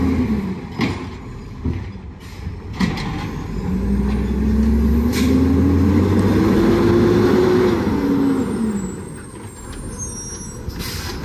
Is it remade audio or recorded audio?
recorded